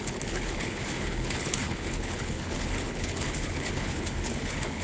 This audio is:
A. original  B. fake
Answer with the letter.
B